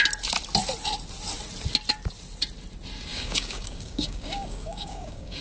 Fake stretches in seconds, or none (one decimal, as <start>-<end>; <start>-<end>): 3.1-5.4